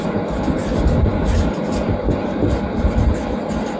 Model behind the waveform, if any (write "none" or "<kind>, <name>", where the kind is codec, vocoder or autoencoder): none